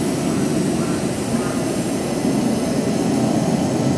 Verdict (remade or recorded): recorded